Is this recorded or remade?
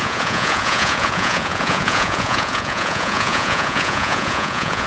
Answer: remade